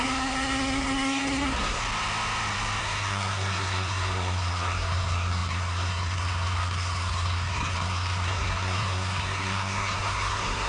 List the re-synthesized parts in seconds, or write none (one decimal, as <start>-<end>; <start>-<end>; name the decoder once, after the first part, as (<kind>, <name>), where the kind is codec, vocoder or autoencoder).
0.0-1.8 (codec, SNAC); 2.8-10.7